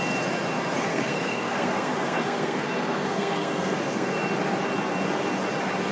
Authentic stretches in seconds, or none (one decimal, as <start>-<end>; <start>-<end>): 0.0-0.9; 4.2-5.9